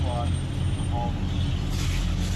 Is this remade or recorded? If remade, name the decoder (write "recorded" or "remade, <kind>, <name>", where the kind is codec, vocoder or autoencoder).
recorded